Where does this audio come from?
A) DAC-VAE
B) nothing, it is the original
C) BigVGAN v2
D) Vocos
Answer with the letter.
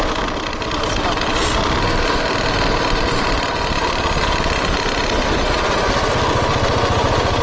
B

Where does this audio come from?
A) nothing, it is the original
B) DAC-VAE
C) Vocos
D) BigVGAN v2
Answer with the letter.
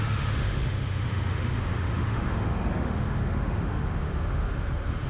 B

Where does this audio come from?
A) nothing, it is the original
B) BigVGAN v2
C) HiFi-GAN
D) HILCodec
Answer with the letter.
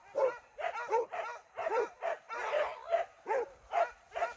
A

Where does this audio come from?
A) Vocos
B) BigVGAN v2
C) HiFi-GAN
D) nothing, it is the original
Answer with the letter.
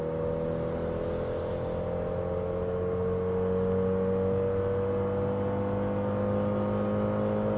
D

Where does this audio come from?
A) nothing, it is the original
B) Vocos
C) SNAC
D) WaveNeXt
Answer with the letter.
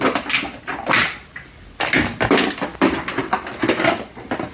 A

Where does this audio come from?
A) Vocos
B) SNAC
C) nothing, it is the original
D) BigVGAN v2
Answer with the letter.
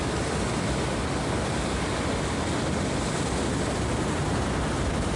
C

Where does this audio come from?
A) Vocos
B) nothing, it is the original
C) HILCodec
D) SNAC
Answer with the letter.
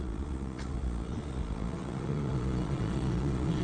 A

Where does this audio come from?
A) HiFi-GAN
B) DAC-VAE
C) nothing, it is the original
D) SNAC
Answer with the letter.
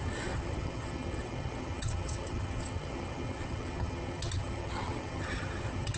A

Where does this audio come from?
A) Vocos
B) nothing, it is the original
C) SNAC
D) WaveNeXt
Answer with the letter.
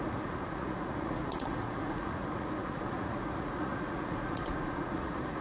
A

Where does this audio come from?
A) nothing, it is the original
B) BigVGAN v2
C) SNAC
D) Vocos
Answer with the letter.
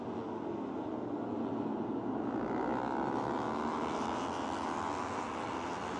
A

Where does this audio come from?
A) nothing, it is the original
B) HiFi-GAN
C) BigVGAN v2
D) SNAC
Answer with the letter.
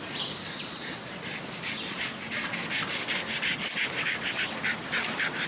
A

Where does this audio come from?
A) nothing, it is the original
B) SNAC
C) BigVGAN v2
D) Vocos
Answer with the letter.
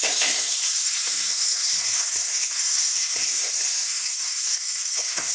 B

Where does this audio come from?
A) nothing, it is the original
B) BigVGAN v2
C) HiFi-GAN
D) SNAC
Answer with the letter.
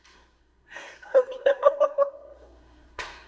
D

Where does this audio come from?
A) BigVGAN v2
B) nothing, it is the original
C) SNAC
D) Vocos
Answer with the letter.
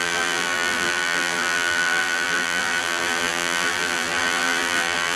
A